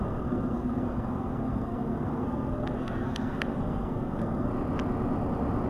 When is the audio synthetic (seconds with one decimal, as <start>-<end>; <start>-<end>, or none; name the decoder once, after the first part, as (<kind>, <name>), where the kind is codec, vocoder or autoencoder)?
0.0-4.5 (codec, SNAC)